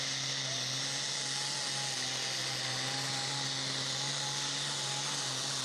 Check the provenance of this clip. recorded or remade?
recorded